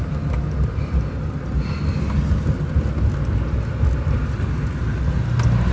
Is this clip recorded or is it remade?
recorded